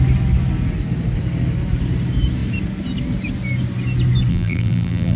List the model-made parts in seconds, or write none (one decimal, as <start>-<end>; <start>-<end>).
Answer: 4.3-5.2